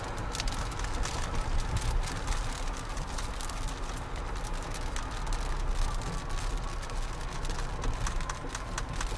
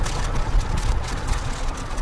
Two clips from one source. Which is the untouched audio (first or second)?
first